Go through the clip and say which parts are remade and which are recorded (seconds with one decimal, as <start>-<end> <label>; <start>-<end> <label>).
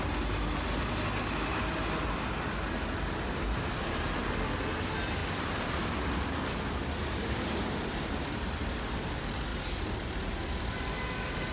0.0-5.2 recorded; 5.2-5.9 remade; 5.9-11.5 recorded